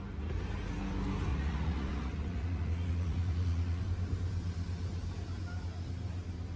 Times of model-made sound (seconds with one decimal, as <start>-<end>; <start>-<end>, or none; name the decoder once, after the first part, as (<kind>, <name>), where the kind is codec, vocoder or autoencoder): 1.3-3.8 (vocoder, Vocos)